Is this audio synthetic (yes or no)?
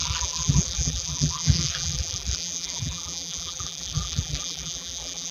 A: yes